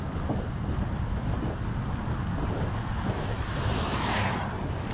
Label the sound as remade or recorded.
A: recorded